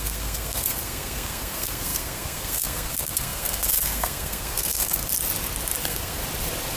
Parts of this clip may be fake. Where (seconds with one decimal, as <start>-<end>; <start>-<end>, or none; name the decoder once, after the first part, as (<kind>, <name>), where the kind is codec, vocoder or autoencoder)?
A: 0.0-5.0 (codec, SNAC); 5.8-6.2